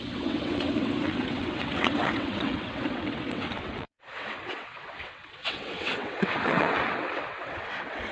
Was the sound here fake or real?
fake